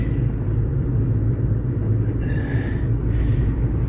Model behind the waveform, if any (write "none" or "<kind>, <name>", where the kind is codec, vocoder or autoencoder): vocoder, BigVGAN v2